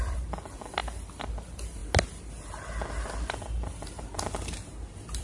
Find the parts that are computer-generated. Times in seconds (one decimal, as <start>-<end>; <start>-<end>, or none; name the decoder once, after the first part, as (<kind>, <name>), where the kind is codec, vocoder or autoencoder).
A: 0.0-1.8 (vocoder, BigVGAN v2)